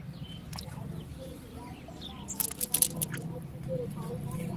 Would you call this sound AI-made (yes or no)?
no